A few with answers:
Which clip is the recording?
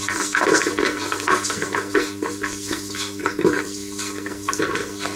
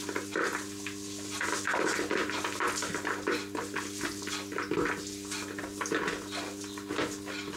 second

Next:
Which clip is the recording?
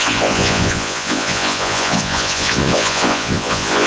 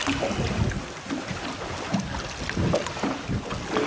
second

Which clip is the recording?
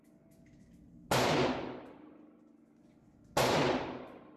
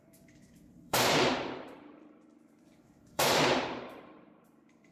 first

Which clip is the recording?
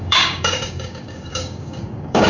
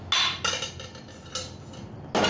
second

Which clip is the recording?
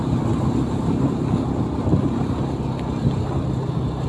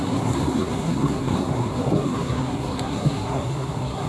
first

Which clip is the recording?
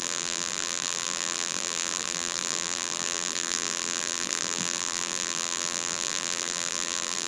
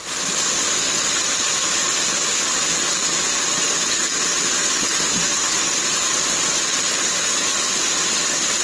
second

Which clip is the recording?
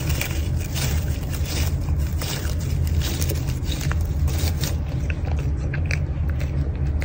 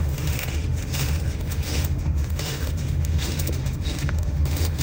first